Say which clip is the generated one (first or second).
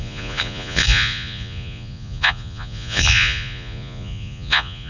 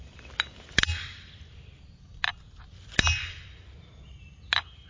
first